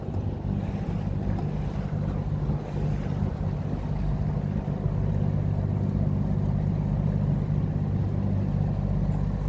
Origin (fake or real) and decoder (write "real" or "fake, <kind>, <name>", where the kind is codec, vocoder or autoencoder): real